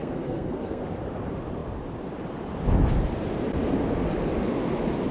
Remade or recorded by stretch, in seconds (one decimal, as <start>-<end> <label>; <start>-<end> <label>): 0.0-0.8 remade; 0.8-5.1 recorded